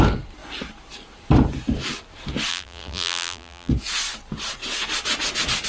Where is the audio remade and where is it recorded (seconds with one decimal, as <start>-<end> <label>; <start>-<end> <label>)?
0.0-2.5 recorded; 2.5-3.7 remade; 3.7-5.7 recorded